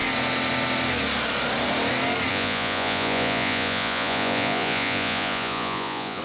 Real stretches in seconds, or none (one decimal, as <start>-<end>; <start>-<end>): 0.0-2.3